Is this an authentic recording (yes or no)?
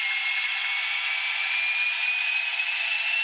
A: yes